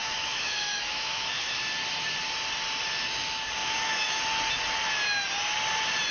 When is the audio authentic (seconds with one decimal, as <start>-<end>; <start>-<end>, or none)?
1.6-3.6; 4.2-6.1